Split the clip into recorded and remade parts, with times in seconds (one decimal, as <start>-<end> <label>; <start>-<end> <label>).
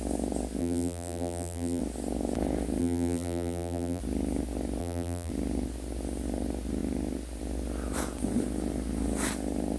0.0-0.6 recorded; 0.6-1.8 remade; 1.8-2.8 recorded; 2.8-4.0 remade; 4.0-4.8 recorded; 4.8-5.3 remade; 5.3-9.8 recorded